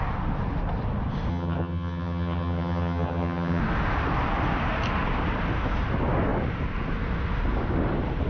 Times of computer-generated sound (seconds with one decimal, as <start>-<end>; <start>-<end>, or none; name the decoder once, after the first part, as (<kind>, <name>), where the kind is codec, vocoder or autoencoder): 1.3-3.6 (vocoder, HiFi-GAN)